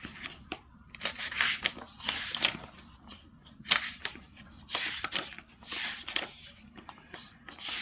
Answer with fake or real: fake